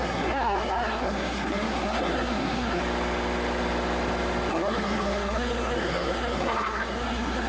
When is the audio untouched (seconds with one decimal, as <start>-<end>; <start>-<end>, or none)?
2.8-4.5